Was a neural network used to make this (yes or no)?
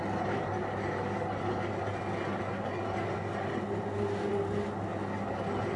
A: no